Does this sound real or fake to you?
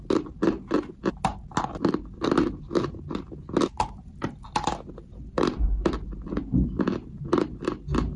real